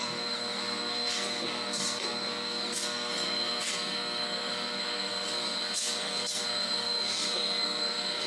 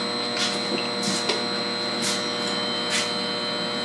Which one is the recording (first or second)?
second